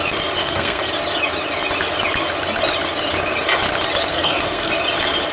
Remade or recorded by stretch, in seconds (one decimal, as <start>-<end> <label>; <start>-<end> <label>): 0.0-0.4 recorded; 0.4-0.9 remade; 0.9-4.1 recorded; 4.1-4.7 remade; 4.7-5.3 recorded